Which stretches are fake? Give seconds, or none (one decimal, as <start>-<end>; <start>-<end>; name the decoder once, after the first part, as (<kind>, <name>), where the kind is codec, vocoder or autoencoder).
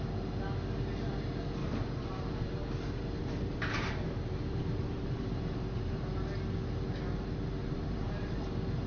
1.6-6.0 (vocoder, BigVGAN v2); 7.6-8.4